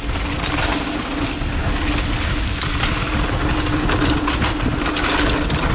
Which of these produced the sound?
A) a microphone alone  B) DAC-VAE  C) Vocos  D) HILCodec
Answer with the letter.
A